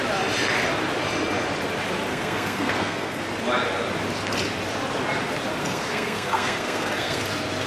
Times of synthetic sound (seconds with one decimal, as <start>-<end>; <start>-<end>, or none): 2.1-3.2; 5.6-7.2